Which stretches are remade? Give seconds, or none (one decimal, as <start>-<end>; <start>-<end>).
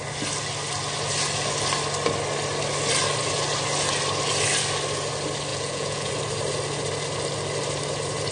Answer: 5.5-6.1